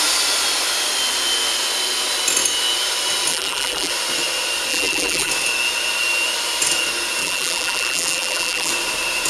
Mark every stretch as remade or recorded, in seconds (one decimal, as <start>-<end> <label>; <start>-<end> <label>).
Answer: 0.0-3.3 recorded; 3.3-3.9 remade; 3.9-4.7 recorded; 4.7-5.3 remade; 5.3-7.2 recorded; 7.2-8.7 remade; 8.7-9.3 recorded